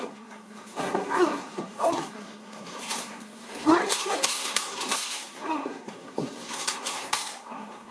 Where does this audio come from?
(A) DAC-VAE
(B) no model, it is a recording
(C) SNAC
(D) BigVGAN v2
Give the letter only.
C